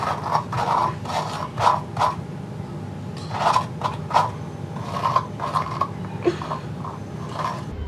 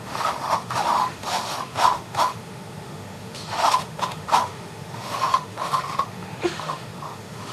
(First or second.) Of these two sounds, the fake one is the second